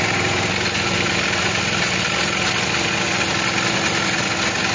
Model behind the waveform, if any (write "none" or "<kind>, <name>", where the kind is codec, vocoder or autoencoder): none